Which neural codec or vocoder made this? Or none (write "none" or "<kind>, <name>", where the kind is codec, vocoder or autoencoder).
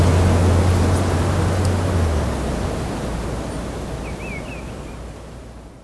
none